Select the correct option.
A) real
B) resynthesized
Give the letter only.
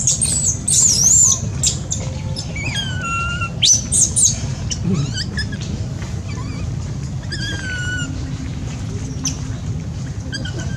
A